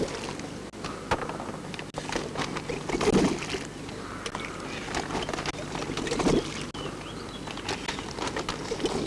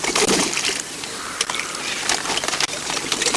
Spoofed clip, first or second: second